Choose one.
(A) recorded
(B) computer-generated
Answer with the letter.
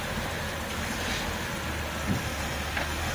A